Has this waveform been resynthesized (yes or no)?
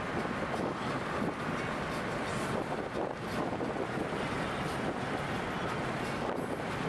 no